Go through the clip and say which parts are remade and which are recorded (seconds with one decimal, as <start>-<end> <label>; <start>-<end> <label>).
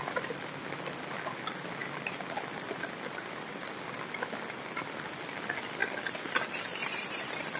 0.0-0.6 remade; 0.6-1.8 recorded; 1.8-3.7 remade; 3.7-5.8 recorded; 5.8-6.6 remade; 6.6-7.6 recorded